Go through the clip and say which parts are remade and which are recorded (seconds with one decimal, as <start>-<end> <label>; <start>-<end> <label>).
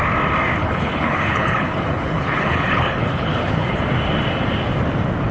0.0-0.6 recorded; 0.6-3.8 remade; 3.8-5.3 recorded